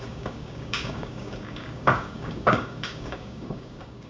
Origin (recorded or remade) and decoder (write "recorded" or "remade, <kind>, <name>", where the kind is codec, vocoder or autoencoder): remade, codec, DAC